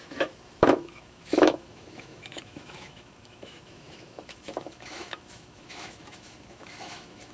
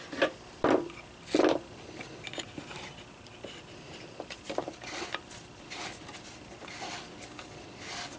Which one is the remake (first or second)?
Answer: first